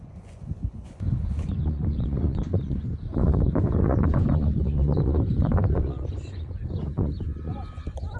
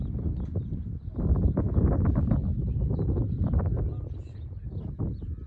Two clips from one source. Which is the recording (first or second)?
second